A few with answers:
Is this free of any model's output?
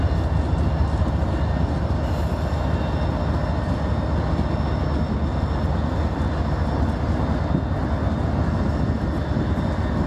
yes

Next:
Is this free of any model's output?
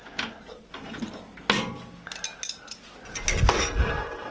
yes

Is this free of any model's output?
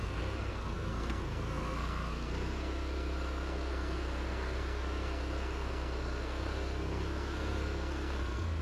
no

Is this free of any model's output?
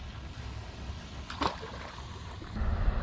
yes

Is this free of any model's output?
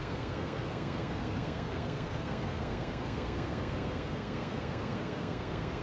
no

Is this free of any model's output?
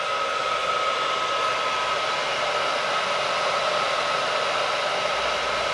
yes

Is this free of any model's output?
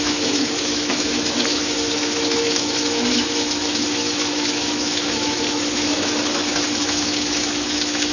no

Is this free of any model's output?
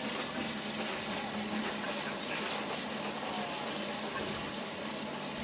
yes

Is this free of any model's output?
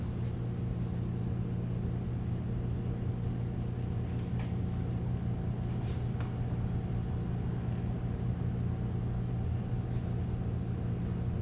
yes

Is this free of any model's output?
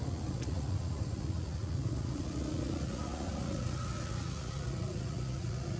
no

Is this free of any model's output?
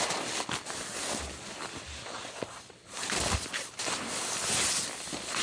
yes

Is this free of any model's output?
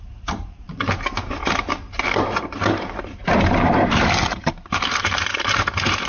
no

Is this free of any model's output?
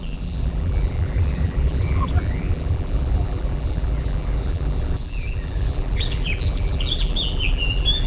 no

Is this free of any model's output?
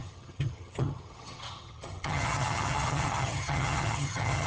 no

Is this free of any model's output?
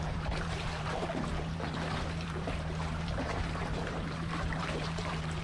no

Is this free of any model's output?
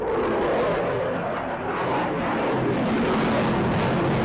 yes